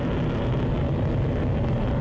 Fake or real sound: real